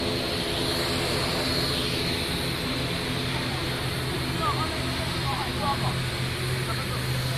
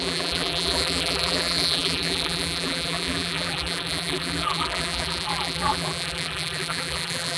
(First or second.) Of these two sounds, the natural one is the first